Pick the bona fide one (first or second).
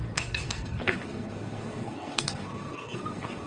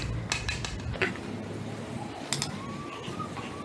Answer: second